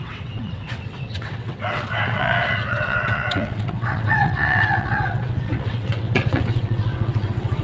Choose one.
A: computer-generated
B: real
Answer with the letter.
A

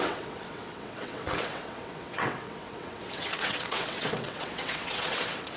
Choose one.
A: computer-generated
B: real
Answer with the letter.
A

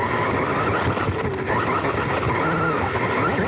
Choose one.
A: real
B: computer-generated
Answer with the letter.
A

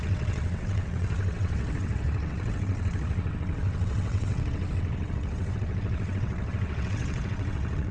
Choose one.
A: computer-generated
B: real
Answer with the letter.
A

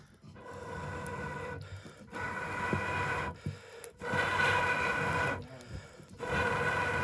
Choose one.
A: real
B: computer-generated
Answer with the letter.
A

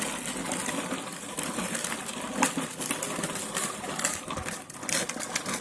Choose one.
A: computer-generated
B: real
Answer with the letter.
B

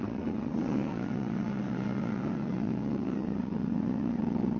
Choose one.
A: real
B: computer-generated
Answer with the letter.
B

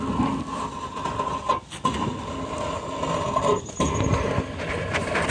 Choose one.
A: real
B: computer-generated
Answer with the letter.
A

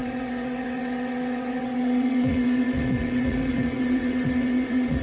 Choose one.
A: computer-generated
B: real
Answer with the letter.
A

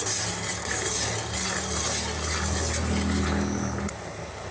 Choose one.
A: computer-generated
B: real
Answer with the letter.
B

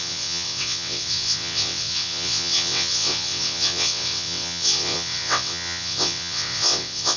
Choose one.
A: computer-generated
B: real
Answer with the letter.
A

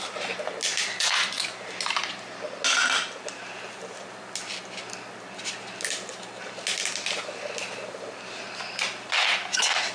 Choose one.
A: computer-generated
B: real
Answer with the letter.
B